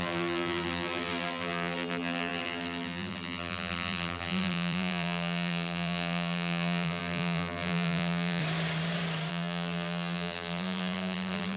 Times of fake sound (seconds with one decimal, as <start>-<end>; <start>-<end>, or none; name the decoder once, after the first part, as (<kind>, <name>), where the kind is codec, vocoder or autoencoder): 0.0-8.4 (vocoder, BigVGAN v2); 9.3-11.6